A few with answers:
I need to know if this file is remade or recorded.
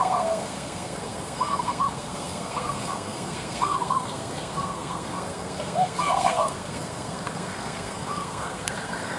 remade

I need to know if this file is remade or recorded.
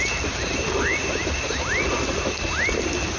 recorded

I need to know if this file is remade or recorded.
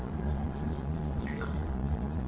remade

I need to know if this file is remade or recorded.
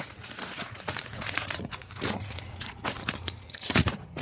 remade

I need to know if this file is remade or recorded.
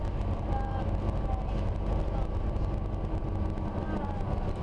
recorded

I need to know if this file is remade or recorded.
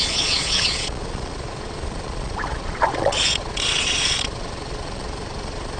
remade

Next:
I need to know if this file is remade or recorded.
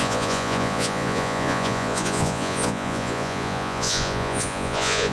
remade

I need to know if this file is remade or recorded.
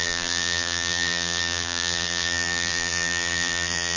remade